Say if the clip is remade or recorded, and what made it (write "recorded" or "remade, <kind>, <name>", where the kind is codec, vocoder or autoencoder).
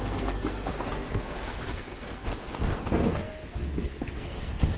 remade, codec, SNAC